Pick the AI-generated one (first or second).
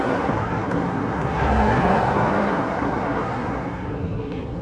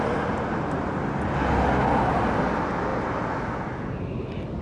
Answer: first